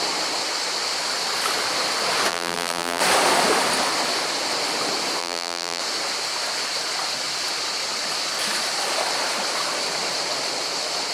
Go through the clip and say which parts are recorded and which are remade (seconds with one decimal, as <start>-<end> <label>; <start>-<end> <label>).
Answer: 0.0-2.3 recorded; 2.3-3.0 remade; 3.0-5.2 recorded; 5.2-5.8 remade; 5.8-11.1 recorded